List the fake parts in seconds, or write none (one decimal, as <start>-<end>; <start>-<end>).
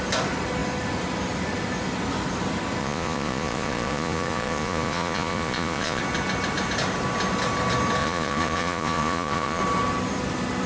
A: 2.8-6.0; 8.0-9.6